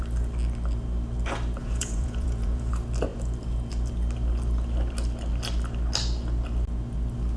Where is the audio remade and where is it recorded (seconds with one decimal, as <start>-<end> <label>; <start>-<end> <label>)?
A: 0.0-1.6 recorded; 1.6-2.7 remade; 2.7-7.4 recorded